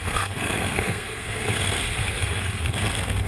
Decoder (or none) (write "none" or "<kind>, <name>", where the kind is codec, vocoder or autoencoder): codec, SNAC